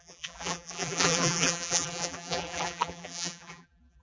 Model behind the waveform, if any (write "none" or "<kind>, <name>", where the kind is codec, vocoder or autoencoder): vocoder, BigVGAN v2